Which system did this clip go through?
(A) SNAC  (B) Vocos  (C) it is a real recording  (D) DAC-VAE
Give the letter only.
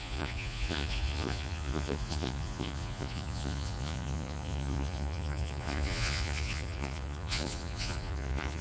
B